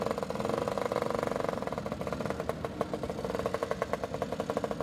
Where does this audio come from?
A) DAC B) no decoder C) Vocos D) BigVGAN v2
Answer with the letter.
B